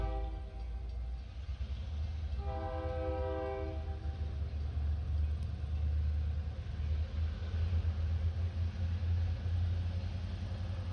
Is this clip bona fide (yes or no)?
yes